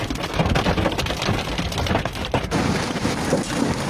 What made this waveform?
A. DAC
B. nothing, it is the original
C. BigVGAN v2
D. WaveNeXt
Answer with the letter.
B